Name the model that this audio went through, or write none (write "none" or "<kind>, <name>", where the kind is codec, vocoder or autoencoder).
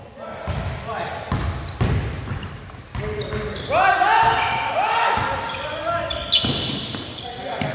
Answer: none